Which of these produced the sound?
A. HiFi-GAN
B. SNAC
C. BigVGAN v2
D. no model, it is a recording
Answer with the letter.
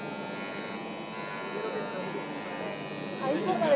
D